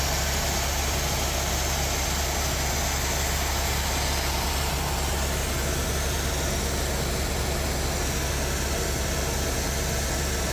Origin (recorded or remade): recorded